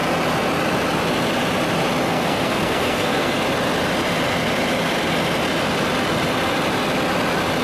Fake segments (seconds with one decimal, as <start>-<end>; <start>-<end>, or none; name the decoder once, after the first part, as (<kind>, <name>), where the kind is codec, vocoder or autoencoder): 2.1-3.4 (codec, SNAC)